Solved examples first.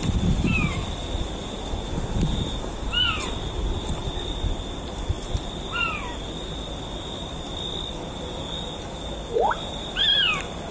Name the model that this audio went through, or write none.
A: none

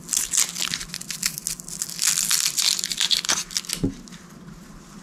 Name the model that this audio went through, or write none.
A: none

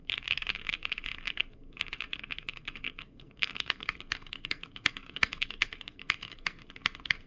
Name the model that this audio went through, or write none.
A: codec, SNAC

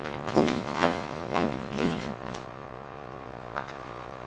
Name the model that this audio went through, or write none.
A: vocoder, Vocos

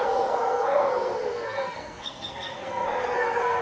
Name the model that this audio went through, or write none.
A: codec, SNAC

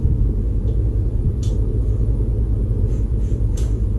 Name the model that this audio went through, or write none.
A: vocoder, Vocos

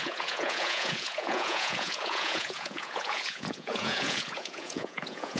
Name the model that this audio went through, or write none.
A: vocoder, Vocos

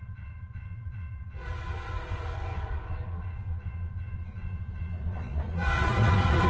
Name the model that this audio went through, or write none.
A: vocoder, Vocos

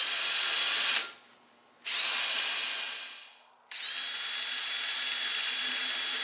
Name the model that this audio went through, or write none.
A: none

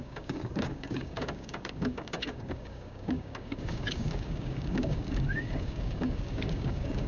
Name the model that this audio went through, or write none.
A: codec, DAC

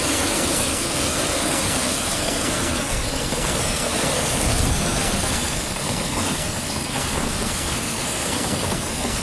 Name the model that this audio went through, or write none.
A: codec, SNAC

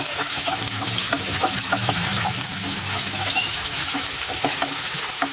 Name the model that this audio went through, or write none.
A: autoencoder, DAC-VAE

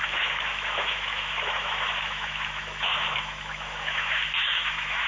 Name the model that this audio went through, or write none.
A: autoencoder, DAC-VAE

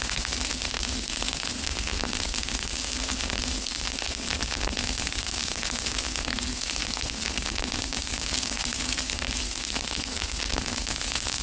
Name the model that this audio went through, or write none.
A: codec, SNAC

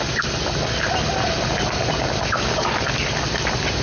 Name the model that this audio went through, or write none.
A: none